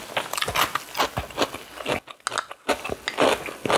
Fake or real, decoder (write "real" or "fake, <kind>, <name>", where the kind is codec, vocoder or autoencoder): real